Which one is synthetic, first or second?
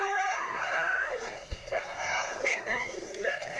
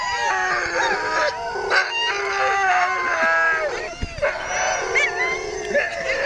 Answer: first